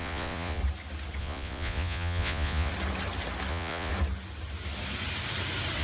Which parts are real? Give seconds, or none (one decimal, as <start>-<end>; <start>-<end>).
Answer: 0.6-1.2; 2.7-3.5; 3.9-5.8